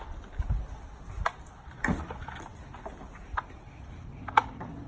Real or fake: real